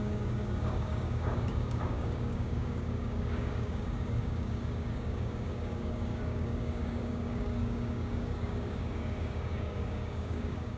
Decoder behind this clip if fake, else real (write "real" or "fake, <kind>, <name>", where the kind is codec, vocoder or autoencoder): fake, codec, DAC